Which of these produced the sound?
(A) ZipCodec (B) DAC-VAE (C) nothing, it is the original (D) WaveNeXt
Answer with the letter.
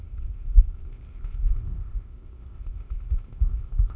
A